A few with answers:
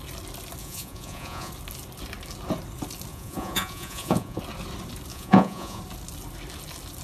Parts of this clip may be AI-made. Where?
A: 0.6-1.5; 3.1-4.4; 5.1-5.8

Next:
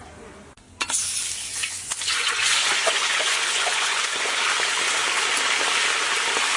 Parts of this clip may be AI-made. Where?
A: 1.5-4.4

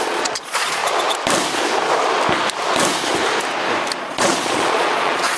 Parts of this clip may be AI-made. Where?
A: 0.0-0.8; 4.0-5.4

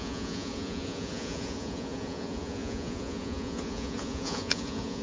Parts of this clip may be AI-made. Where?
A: 0.0-5.0

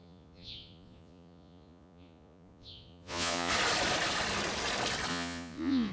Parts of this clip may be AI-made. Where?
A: 0.0-3.5; 5.1-5.9

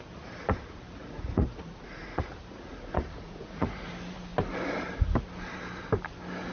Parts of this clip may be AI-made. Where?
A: 1.0-2.2; 2.7-3.9